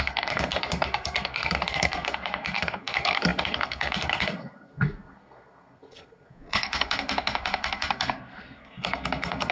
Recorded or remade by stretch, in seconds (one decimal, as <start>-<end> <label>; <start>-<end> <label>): 0.0-9.5 remade